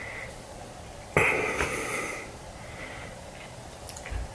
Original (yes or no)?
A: yes